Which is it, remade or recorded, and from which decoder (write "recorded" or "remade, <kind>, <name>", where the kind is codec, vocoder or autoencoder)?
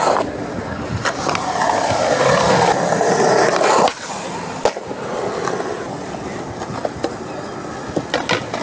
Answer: recorded